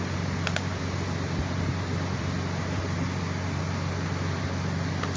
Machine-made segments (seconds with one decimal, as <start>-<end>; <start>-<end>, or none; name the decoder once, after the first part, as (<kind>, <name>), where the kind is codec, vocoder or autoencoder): none